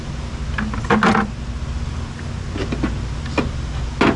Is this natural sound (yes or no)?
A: yes